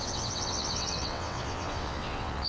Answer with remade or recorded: remade